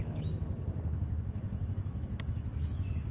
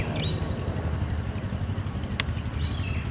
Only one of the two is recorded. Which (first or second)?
second